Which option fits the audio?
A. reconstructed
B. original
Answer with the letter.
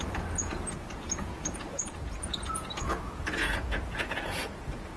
A